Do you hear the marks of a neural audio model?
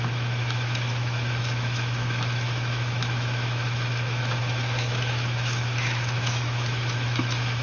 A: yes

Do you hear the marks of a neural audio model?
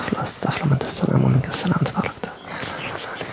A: no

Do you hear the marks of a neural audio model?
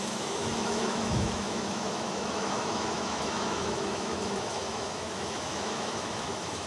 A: yes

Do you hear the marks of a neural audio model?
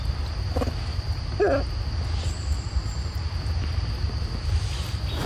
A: no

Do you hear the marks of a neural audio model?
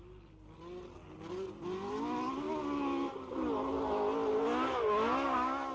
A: no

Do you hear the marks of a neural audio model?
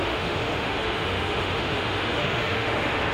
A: yes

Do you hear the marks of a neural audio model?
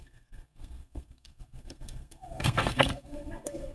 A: yes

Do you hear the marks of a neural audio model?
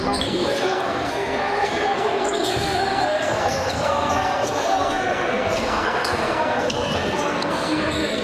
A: yes